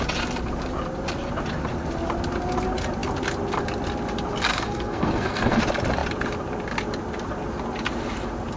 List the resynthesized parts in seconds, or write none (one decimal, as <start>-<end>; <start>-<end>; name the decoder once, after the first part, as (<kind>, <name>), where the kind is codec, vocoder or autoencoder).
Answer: 4.5-5.6 (codec, SNAC)

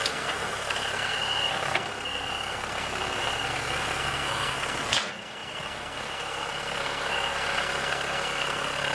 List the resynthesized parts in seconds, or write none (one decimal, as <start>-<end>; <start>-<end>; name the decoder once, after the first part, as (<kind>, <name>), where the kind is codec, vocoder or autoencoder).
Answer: 0.0-8.9 (codec, SNAC)